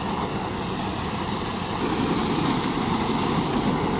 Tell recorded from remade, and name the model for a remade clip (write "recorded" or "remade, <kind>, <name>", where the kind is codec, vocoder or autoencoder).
recorded